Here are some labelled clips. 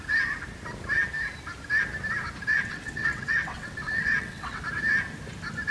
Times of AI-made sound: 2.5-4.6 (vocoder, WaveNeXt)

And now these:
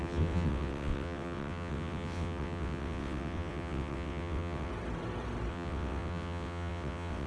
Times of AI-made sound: 0.0-4.7 (vocoder, WaveNeXt); 5.5-7.3

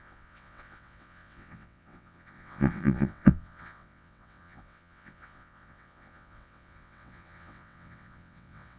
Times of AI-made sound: 0.0-8.8 (vocoder, WaveNeXt)

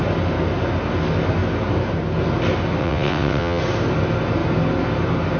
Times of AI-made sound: 2.8-3.6 (vocoder, WaveNeXt)